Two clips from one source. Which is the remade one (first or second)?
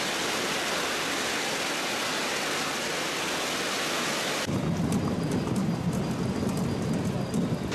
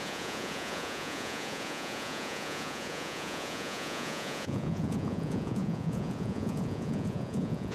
second